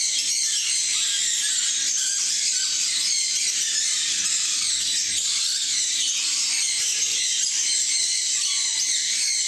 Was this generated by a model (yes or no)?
no